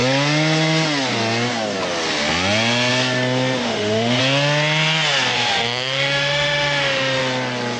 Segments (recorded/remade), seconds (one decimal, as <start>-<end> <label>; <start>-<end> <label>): 0.0-3.6 recorded; 3.6-4.2 remade; 4.2-5.3 recorded; 5.3-7.2 remade; 7.2-7.8 recorded